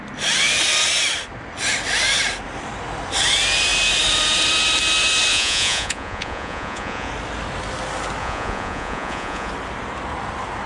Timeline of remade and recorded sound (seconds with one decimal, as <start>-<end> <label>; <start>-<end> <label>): 0.0-5.3 recorded; 5.3-7.1 remade; 7.1-8.2 recorded; 8.2-9.5 remade; 9.5-10.7 recorded